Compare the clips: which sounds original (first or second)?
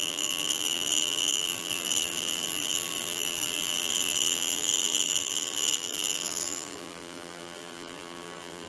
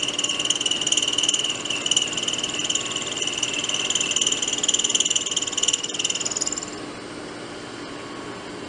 second